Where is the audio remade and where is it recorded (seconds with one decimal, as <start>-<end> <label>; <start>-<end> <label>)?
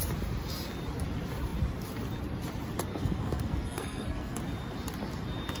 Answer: 0.0-2.9 recorded; 2.9-4.4 remade; 4.4-5.6 recorded